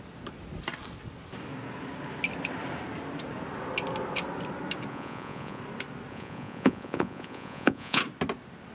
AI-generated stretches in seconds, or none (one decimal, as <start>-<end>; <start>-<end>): 4.9-5.6; 6.1-8.0